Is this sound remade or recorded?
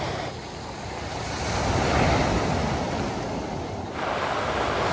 recorded